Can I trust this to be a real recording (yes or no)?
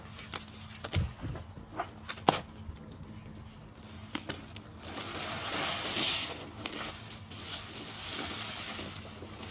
yes